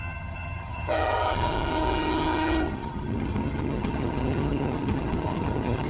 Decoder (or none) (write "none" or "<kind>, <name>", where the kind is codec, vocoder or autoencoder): vocoder, HiFi-GAN